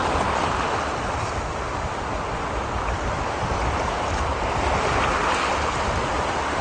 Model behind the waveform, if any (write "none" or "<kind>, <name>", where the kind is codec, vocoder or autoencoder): none